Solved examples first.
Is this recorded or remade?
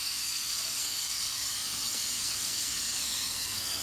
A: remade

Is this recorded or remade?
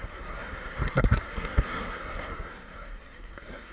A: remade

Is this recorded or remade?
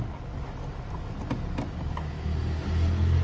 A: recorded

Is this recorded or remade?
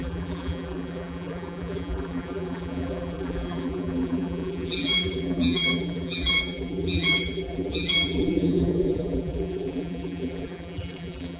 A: remade